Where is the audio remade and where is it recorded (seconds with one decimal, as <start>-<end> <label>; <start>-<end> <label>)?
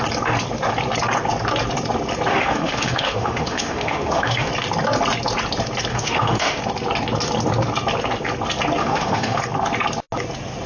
0.0-2.3 recorded; 2.3-4.5 remade; 4.5-5.9 recorded; 5.9-6.6 remade; 6.6-8.8 recorded; 8.8-9.4 remade; 9.4-10.7 recorded